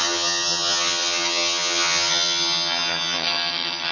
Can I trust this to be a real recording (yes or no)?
no